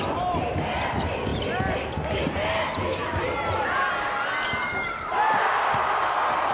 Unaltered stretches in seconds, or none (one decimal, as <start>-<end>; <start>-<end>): 0.0-6.5

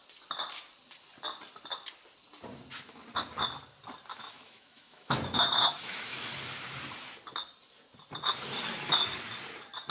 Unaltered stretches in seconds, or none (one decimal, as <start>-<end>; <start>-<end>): 0.0-4.1; 6.3-9.9

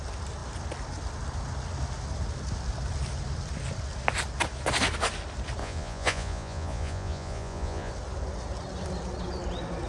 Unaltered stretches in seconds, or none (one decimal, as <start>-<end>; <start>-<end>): 0.0-5.6; 7.9-9.9

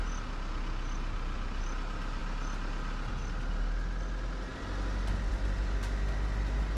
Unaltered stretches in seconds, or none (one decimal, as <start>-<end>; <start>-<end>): 0.0-6.8

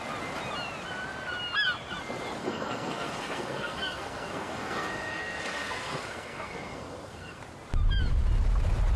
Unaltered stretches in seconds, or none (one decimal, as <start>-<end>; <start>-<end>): 0.0-2.4; 7.4-9.0

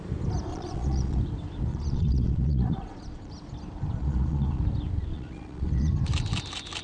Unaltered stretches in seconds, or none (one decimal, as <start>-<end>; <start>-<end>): 0.0-0.5; 1.2-1.7; 3.3-4.0; 4.6-5.1; 5.9-6.8

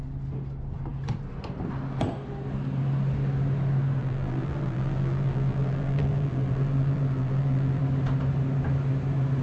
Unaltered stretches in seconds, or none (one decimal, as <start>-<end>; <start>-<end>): 0.0-4.0; 7.8-9.4

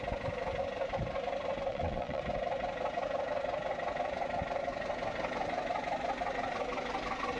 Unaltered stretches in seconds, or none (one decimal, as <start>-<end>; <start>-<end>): 0.0-1.7; 2.2-7.4